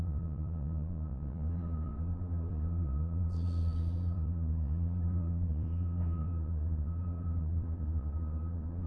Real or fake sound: fake